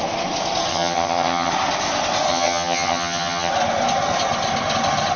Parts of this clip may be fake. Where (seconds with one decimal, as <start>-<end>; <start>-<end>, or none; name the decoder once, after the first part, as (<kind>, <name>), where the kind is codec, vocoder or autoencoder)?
0.7-1.5 (vocoder, HiFi-GAN); 2.3-3.5